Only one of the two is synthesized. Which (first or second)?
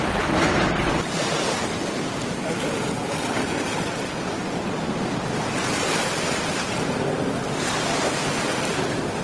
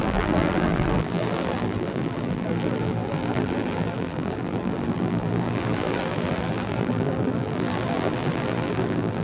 second